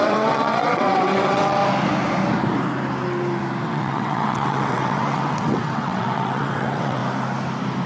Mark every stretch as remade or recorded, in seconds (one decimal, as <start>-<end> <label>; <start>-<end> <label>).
0.0-1.6 remade; 1.6-3.6 recorded; 3.6-7.0 remade; 7.0-7.9 recorded